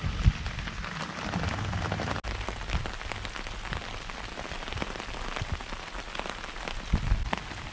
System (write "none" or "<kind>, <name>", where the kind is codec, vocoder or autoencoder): none